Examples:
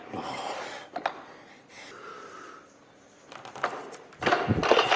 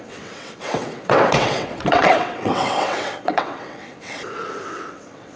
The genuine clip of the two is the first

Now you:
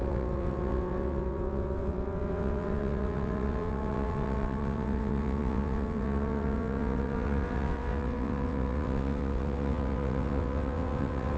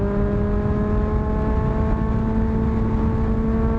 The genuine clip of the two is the second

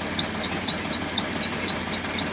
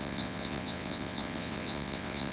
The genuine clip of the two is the first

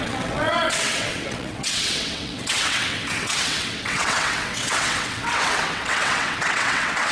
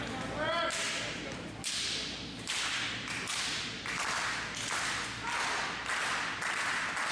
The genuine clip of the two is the second